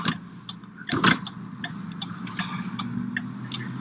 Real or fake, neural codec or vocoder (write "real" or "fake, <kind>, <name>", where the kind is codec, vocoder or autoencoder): real